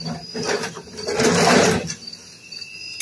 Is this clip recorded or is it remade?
recorded